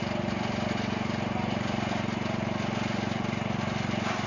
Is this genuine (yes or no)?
yes